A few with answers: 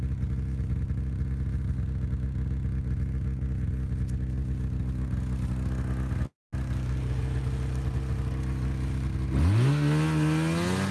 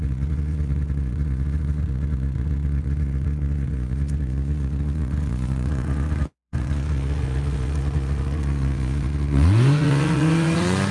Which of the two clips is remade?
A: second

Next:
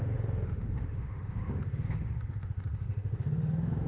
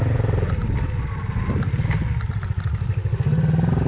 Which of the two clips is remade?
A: first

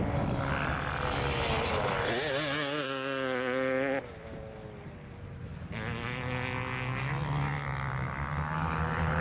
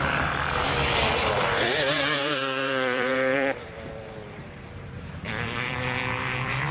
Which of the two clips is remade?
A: second